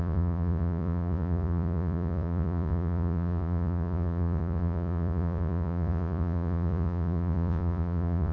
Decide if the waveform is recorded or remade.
remade